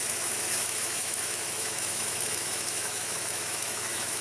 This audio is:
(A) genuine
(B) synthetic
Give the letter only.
B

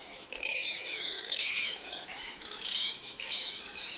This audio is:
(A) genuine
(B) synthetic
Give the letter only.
B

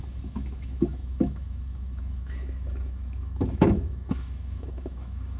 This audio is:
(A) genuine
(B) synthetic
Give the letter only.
B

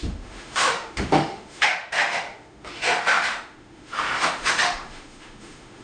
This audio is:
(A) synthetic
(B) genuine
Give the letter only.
A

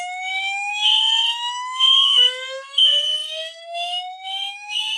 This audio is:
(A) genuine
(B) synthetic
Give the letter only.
B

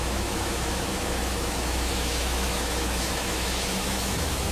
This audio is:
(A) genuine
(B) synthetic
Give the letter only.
B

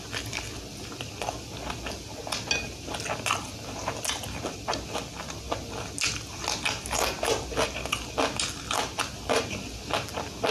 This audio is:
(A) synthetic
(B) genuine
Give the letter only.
B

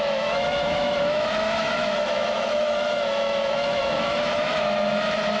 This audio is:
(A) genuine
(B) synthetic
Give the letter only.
B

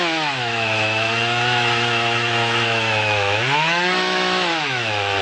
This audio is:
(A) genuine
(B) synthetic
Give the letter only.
B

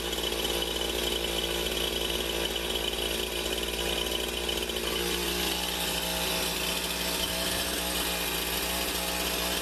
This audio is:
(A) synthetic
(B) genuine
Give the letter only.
B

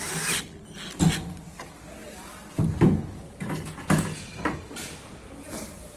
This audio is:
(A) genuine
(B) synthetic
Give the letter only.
A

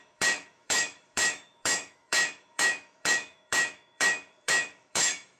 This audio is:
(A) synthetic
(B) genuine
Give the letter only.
A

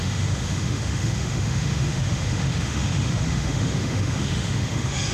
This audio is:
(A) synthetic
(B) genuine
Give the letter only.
A